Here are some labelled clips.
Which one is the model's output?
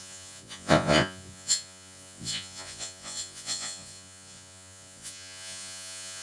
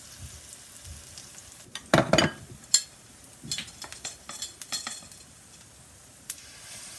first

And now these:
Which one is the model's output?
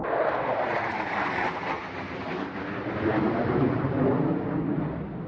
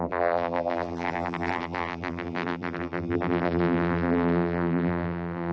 second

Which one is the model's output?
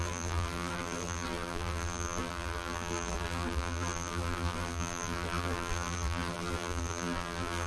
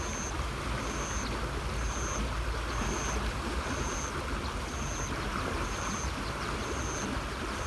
first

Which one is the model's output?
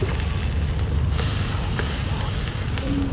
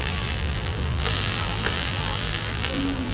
second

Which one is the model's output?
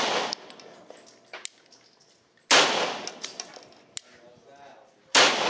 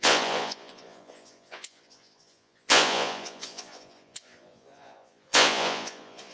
second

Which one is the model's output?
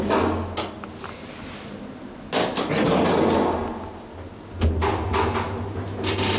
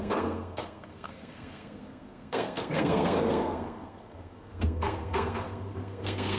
second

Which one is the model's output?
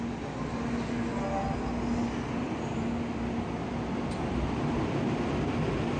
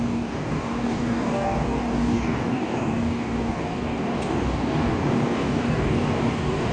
second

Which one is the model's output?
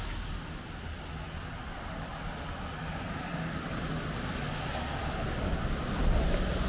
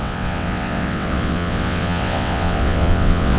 second